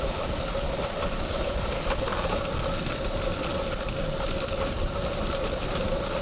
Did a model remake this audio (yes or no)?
no